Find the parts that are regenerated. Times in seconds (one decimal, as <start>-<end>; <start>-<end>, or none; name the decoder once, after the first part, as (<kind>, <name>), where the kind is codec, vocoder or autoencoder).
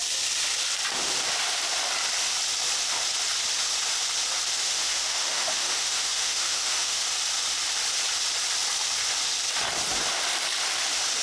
4.6-7.0 (autoencoder, DAC-VAE)